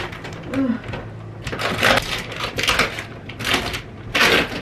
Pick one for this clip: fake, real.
real